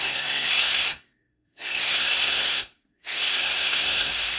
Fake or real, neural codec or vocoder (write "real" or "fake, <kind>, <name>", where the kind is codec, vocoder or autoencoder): fake, codec, SNAC